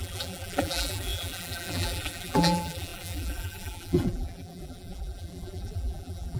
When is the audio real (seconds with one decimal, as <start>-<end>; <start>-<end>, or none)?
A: none